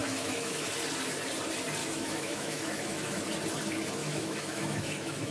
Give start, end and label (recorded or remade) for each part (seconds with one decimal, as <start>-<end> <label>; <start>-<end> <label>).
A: 0.0-0.7 remade; 0.7-1.8 recorded; 1.8-3.2 remade; 3.2-4.0 recorded; 4.0-5.3 remade

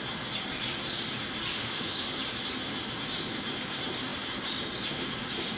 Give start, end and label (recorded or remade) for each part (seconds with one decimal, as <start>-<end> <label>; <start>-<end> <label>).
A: 0.0-1.5 recorded; 1.5-2.1 remade; 2.1-5.6 recorded

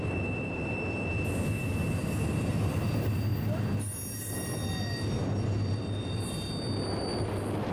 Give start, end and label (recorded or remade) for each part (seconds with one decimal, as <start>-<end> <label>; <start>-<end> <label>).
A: 0.0-7.7 recorded

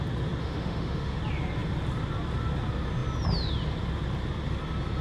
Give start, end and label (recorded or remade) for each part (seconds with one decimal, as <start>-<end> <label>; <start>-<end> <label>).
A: 0.0-0.4 recorded; 0.4-1.2 remade; 1.2-5.0 recorded

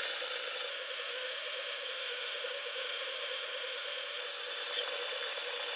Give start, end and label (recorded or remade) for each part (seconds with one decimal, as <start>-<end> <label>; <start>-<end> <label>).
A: 0.0-0.7 recorded; 0.7-4.2 remade; 4.2-5.8 recorded

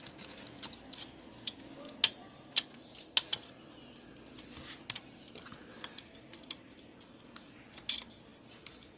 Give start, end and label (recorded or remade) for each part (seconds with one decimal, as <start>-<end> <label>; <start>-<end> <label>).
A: 0.0-9.0 recorded

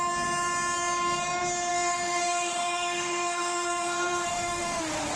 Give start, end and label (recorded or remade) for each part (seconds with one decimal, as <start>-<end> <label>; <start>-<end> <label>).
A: 0.0-1.7 recorded; 1.7-4.8 remade; 4.8-5.2 recorded

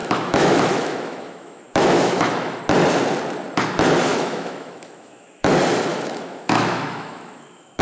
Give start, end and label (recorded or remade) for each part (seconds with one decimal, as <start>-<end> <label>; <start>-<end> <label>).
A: 0.0-2.6 remade; 2.6-4.1 recorded; 4.1-5.5 remade; 5.5-5.9 recorded; 5.9-7.8 remade